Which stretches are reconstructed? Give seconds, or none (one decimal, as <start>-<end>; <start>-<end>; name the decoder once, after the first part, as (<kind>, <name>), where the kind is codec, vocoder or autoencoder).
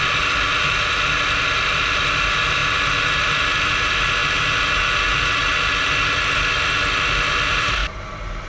7.8-8.5 (vocoder, BigVGAN v2)